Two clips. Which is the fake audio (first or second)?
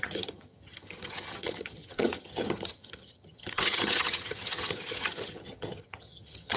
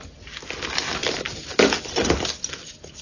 first